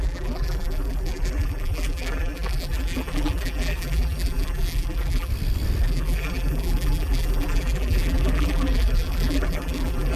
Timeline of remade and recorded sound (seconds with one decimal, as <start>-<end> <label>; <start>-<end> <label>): 0.0-5.3 remade; 5.3-5.8 recorded; 5.8-10.2 remade